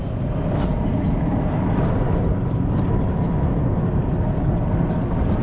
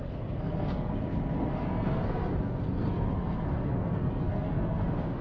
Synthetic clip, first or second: second